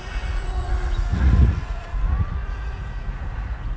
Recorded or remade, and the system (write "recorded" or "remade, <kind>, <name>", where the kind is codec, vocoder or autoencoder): remade, vocoder, Vocos